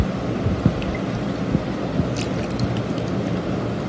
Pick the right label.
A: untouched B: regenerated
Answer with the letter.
A